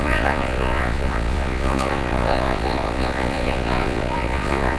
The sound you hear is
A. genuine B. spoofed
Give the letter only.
B